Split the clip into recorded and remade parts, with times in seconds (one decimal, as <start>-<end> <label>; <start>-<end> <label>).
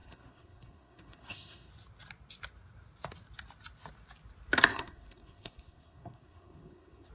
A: 0.0-1.7 remade; 1.7-4.7 recorded; 4.7-7.1 remade